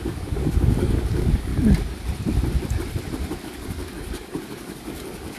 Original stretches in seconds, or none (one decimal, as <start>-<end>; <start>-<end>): 1.5-3.4